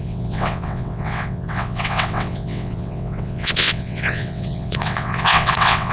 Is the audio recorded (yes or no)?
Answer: no